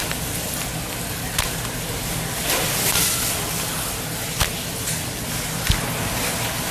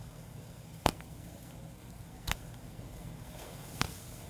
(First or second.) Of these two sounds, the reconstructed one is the second